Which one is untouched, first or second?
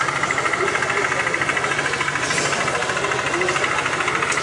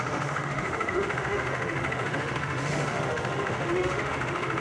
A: first